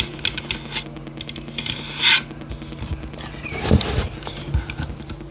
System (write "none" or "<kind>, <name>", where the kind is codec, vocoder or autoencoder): none